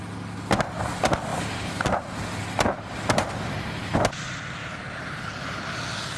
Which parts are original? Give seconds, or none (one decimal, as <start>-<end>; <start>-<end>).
0.0-1.3; 2.1-4.6; 5.8-6.2